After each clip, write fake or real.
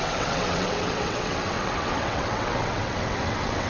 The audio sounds fake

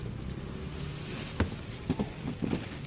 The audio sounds real